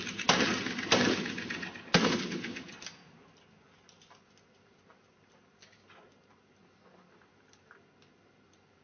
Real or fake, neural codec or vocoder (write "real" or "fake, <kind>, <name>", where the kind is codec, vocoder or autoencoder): real